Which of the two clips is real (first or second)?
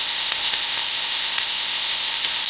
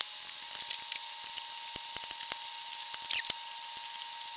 second